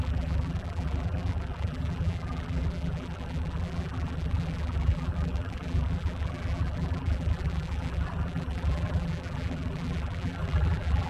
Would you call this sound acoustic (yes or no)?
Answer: no